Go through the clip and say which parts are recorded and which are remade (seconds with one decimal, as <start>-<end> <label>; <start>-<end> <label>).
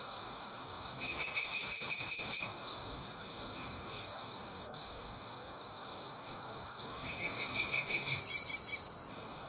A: 0.0-8.2 remade; 8.2-9.1 recorded; 9.1-9.5 remade